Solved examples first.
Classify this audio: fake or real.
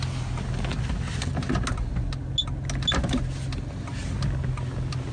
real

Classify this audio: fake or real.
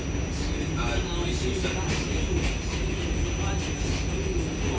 real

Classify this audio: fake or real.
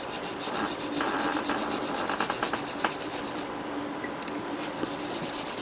real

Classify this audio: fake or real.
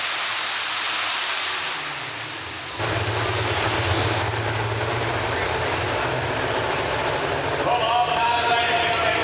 real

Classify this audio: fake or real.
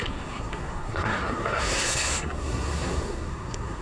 fake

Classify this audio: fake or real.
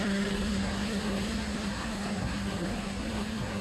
fake